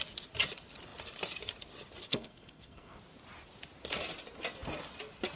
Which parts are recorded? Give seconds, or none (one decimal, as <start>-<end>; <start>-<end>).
0.0-2.1; 3.0-5.4